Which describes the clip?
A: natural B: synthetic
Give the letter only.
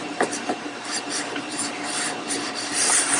B